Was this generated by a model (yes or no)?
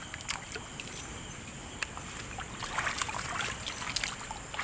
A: no